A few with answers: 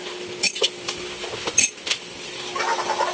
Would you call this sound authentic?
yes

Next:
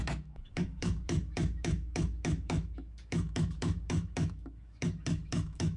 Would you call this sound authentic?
no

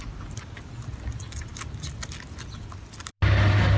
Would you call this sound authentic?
yes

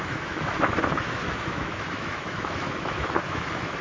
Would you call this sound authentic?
no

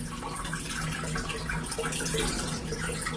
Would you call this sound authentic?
yes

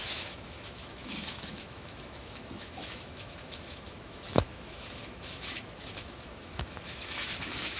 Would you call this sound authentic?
no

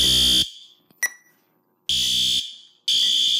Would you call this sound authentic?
yes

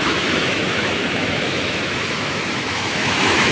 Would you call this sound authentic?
no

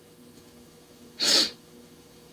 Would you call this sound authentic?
no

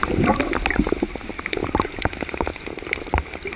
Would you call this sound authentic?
yes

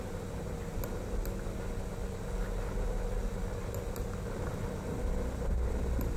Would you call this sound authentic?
yes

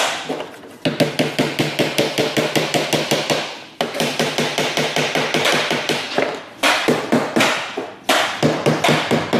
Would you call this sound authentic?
yes